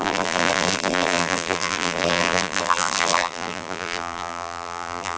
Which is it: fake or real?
fake